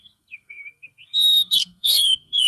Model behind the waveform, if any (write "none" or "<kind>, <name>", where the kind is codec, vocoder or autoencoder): codec, SNAC